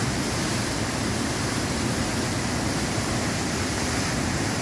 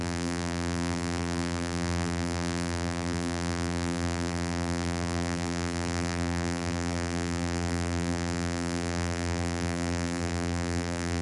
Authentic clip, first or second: first